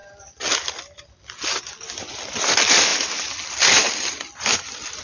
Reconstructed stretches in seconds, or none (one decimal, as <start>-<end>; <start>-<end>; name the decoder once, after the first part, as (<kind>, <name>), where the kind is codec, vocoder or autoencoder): none